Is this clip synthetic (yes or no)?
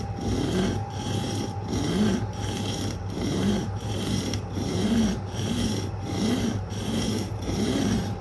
yes